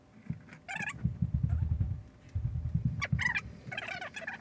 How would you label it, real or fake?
real